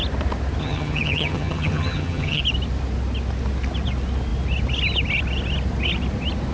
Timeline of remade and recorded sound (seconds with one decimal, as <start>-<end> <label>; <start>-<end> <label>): 0.0-0.6 recorded; 0.6-2.4 remade; 2.4-6.5 recorded